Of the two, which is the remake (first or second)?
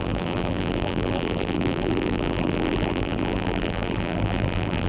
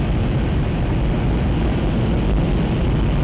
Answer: first